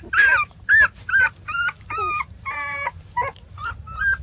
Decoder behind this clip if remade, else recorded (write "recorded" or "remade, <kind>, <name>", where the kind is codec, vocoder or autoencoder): remade, vocoder, BigVGAN v2